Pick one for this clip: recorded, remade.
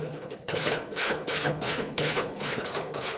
remade